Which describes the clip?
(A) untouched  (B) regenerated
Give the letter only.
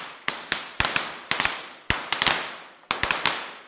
B